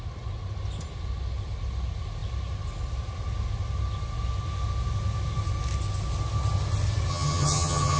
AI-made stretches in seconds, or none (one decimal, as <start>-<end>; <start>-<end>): 7.1-8.0

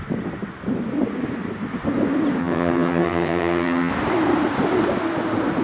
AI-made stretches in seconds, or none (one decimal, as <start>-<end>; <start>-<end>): 2.4-3.9

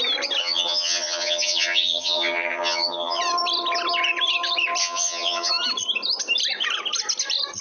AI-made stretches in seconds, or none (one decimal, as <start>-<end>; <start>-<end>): 0.4-3.2; 4.8-5.5